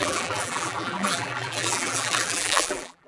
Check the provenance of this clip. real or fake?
fake